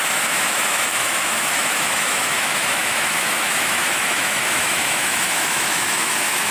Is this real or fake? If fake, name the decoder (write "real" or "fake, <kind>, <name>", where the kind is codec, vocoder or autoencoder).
fake, autoencoder, DAC-VAE